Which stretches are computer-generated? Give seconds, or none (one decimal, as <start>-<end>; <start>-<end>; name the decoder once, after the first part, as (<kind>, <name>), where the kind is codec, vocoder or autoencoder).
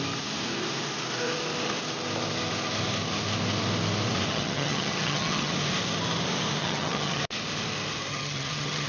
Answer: 4.3-5.5 (vocoder, HiFi-GAN); 6.6-7.2; 8.1-8.9